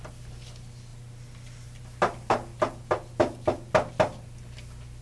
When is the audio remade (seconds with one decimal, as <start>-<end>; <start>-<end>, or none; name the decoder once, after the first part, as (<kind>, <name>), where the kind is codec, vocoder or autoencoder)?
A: none